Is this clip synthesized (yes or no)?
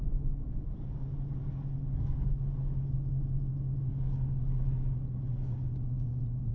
no